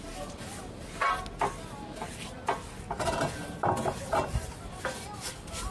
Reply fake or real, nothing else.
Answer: real